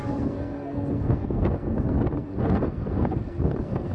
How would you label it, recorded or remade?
remade